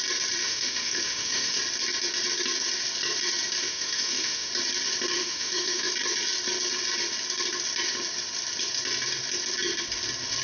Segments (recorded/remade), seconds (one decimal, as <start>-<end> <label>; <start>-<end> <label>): 0.0-0.4 recorded; 0.4-1.6 remade; 1.6-3.6 recorded; 3.6-4.5 remade; 4.5-5.2 recorded; 5.2-5.9 remade; 5.9-10.4 recorded